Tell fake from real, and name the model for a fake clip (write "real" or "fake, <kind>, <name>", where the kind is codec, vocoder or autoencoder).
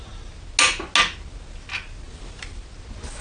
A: real